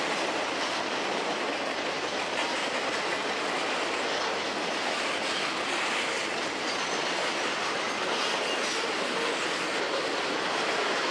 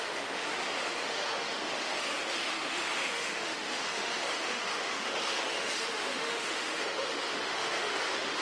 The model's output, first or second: second